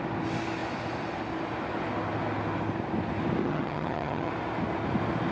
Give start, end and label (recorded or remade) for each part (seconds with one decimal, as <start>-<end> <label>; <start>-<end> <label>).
0.0-3.4 recorded; 3.4-4.3 remade; 4.3-5.3 recorded